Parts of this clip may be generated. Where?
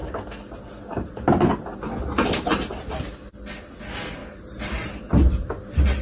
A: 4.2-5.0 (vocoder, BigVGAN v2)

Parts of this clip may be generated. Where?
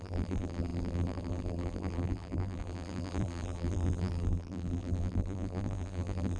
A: 0.0-6.4 (vocoder, BigVGAN v2)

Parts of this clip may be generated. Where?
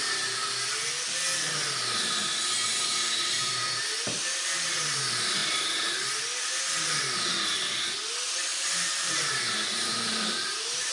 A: 2.7-3.6 (vocoder, BigVGAN v2); 8.5-10.9